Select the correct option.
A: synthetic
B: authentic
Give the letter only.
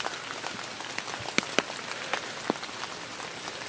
B